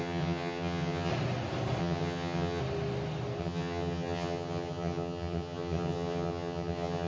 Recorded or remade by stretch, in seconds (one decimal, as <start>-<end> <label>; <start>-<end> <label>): 0.0-1.1 remade; 1.1-1.8 recorded; 1.8-2.6 remade; 2.6-3.4 recorded; 3.4-7.1 remade